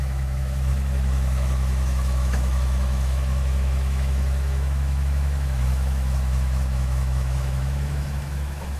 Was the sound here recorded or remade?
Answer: remade